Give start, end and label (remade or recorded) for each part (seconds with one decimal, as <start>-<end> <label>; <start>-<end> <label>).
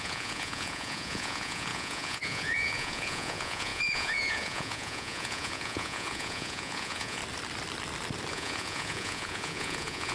0.0-7.2 remade; 7.2-8.3 recorded; 8.3-10.1 remade